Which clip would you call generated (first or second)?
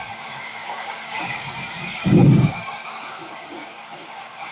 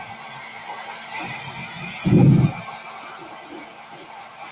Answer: first